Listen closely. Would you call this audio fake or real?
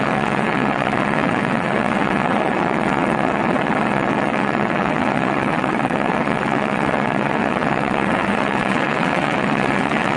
fake